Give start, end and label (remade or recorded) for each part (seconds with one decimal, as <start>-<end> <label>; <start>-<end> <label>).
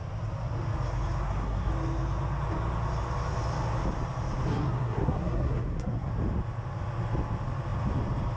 0.0-1.2 recorded; 1.2-1.7 remade; 1.7-4.5 recorded; 4.5-6.1 remade; 6.1-8.4 recorded